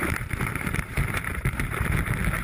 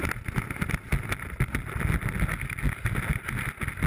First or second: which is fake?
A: first